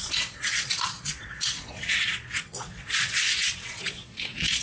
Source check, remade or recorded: remade